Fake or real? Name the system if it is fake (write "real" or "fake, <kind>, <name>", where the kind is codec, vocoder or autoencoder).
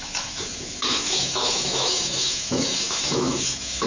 fake, autoencoder, DAC-VAE